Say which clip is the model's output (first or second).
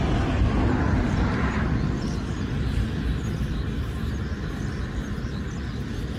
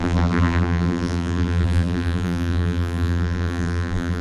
second